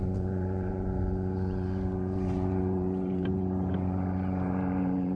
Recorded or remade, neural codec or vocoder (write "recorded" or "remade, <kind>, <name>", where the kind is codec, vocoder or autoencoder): remade, vocoder, BigVGAN v2